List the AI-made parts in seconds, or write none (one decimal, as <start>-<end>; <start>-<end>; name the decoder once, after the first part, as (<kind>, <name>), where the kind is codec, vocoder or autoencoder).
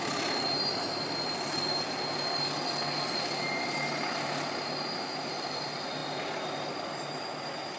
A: none